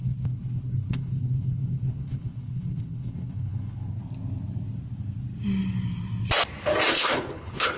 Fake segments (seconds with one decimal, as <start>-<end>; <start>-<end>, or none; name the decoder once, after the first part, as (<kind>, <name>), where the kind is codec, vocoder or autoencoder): 0.0-4.0 (codec, HILCodec); 6.9-7.8